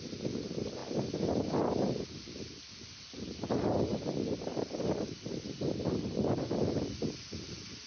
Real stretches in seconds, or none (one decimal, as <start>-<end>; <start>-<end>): 0.0-7.9